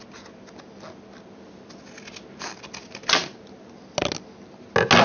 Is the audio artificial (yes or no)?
no